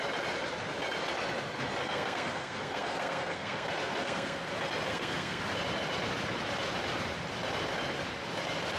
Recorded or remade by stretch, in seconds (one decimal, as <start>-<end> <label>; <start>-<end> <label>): 0.0-1.8 recorded; 1.8-4.5 remade; 4.5-4.9 recorded; 4.9-5.4 remade; 5.4-8.8 recorded